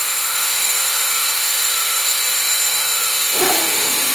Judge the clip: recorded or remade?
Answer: remade